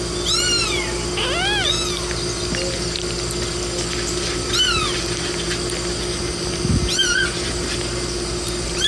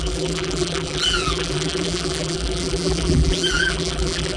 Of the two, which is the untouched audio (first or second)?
first